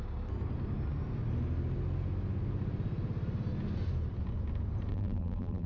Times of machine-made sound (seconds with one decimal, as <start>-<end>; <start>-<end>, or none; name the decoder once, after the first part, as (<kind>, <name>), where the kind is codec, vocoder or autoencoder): 4.9-5.7 (vocoder, BigVGAN v2)